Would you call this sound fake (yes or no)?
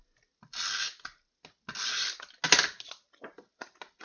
no